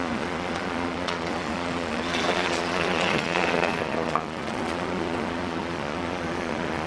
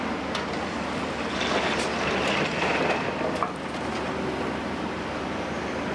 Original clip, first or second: second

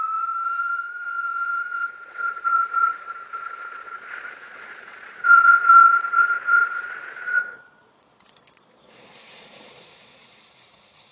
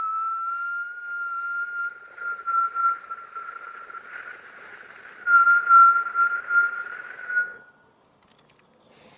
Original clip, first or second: second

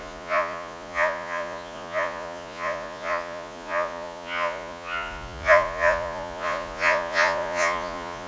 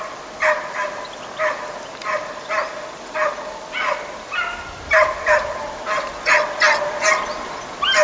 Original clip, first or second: second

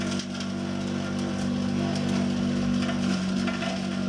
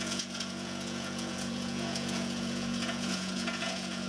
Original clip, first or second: first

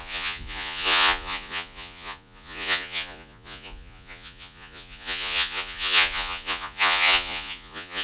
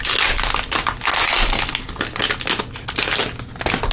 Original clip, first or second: second